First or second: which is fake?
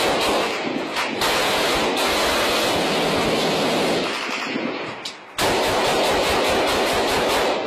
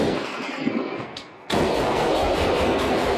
second